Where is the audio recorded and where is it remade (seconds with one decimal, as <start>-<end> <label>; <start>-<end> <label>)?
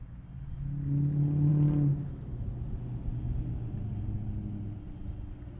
0.0-5.6 recorded